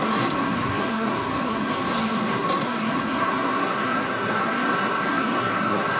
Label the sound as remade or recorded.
remade